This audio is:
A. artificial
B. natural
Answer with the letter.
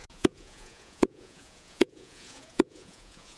A